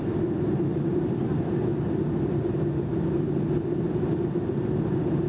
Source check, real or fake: real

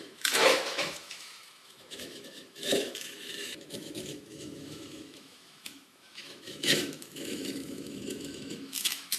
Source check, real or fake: fake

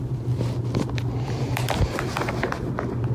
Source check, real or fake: real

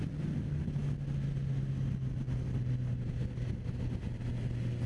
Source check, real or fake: real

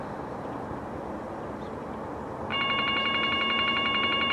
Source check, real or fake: fake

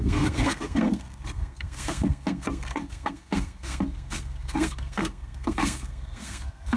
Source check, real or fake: fake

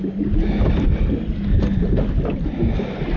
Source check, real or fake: real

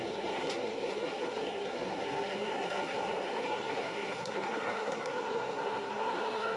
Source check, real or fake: fake